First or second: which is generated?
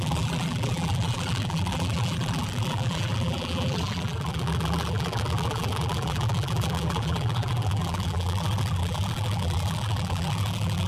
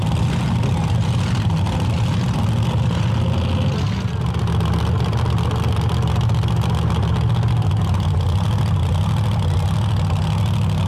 first